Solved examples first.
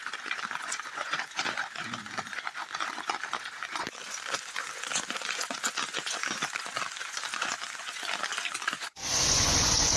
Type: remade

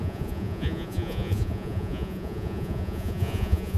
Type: remade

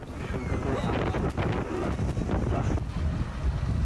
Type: recorded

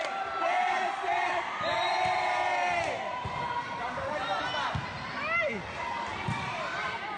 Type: recorded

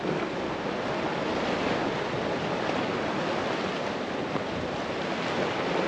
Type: recorded